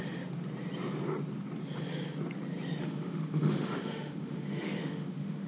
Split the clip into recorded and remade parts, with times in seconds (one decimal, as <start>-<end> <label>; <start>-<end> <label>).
0.0-2.8 recorded; 2.8-5.5 remade

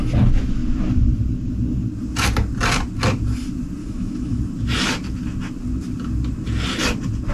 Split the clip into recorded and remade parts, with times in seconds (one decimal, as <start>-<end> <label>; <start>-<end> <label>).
0.0-3.8 recorded; 3.8-4.4 remade; 4.4-7.3 recorded

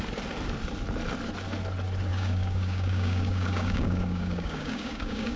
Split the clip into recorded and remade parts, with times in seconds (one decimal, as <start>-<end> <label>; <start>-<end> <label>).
0.0-2.1 recorded; 2.1-5.4 remade

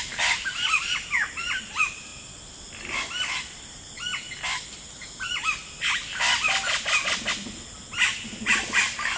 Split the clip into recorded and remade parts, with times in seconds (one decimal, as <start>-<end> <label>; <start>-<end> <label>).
0.0-9.2 recorded